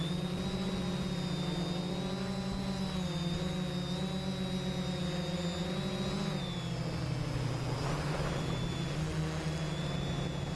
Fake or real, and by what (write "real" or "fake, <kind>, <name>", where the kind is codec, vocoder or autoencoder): real